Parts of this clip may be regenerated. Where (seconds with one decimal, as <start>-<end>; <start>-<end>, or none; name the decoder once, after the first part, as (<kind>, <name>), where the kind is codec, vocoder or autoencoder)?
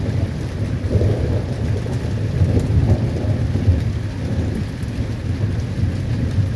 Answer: none